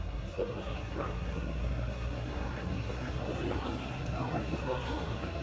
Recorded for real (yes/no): no